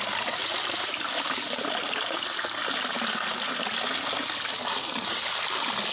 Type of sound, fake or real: real